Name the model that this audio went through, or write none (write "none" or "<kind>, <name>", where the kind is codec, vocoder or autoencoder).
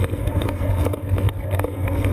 codec, SNAC